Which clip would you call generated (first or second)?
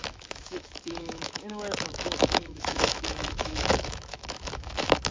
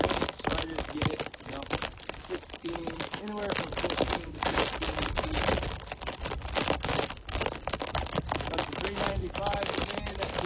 first